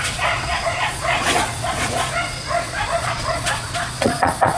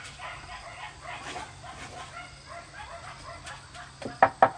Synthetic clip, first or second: first